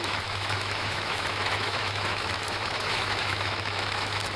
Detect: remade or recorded remade